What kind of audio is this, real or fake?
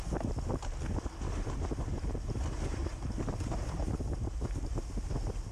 real